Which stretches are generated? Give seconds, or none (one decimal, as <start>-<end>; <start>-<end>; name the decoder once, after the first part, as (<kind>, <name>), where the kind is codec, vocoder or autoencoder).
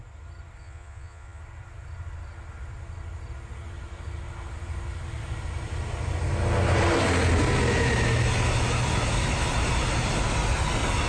0.6-1.4 (vocoder, Vocos)